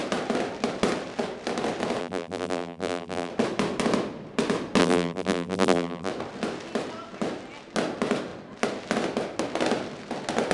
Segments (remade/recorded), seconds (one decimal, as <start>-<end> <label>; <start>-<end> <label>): 0.0-2.0 recorded; 2.0-3.3 remade; 3.3-4.8 recorded; 4.8-6.1 remade; 6.1-10.5 recorded